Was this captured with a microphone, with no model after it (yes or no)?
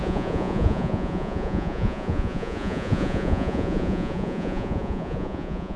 no